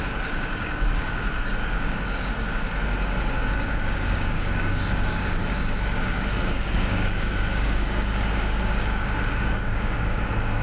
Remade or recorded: remade